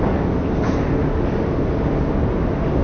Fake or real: real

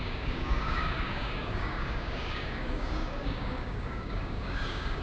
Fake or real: fake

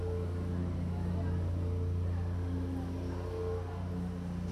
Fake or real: real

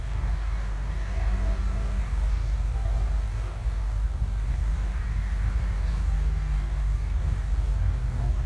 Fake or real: fake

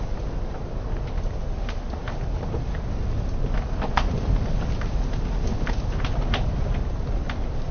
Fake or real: real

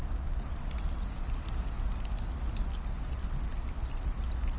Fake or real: real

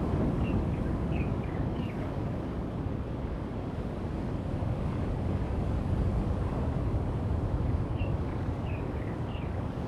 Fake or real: fake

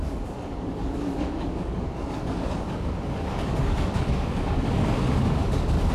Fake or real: fake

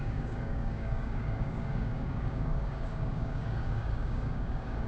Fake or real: fake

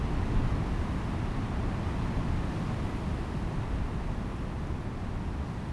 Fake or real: real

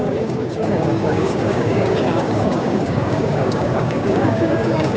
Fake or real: fake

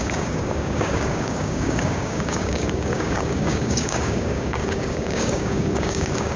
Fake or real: fake